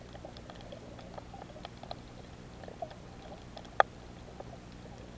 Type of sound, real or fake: real